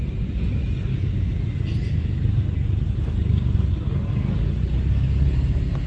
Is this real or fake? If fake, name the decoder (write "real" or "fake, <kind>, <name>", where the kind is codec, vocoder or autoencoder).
real